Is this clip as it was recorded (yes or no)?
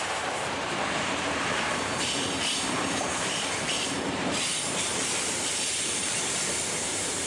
no